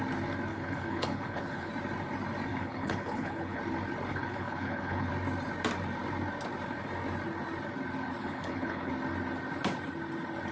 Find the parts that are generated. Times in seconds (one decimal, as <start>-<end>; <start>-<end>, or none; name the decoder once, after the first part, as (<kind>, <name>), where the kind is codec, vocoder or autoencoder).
0.5-1.7 (codec, HILCodec); 2.5-3.6; 4.1-5.1; 8.2-8.9